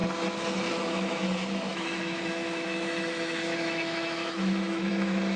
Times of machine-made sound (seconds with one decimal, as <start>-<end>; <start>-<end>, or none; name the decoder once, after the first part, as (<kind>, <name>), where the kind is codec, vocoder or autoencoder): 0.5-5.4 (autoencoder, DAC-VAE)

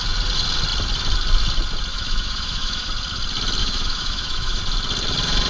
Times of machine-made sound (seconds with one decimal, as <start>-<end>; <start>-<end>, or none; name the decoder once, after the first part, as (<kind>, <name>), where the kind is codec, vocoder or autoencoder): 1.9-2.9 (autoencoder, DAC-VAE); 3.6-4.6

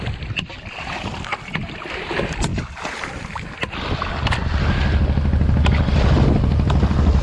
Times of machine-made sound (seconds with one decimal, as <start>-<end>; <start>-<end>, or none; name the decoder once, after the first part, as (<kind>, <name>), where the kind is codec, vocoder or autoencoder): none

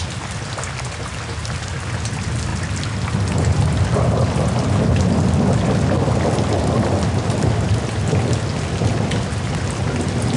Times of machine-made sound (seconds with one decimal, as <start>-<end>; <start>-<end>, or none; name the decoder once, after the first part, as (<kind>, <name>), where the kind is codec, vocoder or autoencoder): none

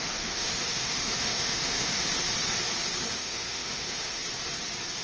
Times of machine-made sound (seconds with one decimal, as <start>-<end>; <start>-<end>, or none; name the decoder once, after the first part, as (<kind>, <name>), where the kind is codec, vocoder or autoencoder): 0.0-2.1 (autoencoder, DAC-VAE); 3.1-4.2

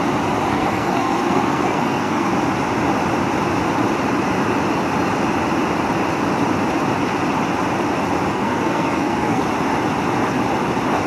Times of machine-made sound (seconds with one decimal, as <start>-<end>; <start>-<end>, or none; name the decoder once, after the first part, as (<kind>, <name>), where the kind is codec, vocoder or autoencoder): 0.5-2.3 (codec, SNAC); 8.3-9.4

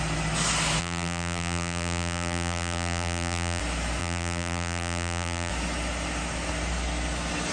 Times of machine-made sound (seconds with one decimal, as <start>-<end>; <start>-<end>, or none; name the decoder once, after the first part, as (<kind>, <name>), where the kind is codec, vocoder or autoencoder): 0.8-3.6 (vocoder, BigVGAN v2); 4.0-5.5

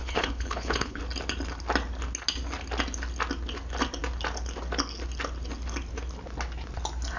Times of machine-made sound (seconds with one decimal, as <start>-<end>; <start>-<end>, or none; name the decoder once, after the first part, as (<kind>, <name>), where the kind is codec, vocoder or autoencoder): 0.0-1.0 (codec, HILCodec)